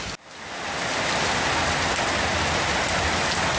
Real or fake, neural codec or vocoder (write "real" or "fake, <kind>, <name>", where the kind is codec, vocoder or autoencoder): real